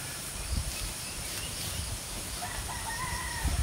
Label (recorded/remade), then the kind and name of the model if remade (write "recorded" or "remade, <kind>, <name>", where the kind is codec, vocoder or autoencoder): remade, vocoder, BigVGAN v2